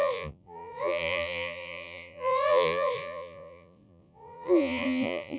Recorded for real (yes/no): no